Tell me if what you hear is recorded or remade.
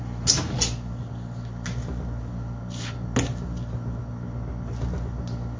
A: recorded